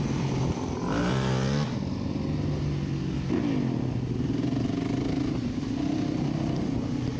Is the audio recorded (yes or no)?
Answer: yes